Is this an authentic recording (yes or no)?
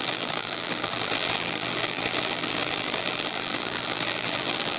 no